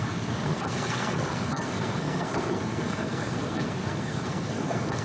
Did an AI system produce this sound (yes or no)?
yes